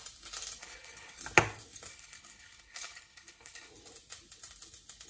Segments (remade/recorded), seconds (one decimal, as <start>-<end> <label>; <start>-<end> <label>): 0.0-0.6 recorded; 0.6-1.2 remade; 1.2-1.9 recorded; 1.9-3.7 remade; 3.7-5.1 recorded